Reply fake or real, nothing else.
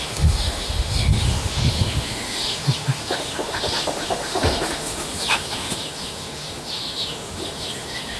fake